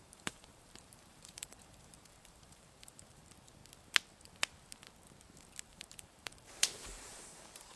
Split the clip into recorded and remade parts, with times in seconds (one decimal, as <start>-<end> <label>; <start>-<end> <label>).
0.0-3.6 remade; 3.6-5.6 recorded; 5.6-7.8 remade